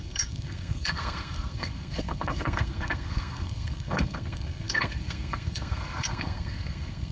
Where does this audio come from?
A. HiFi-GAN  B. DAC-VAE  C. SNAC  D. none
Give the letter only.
C